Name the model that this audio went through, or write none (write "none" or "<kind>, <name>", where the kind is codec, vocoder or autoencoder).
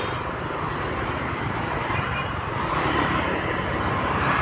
vocoder, BigVGAN v2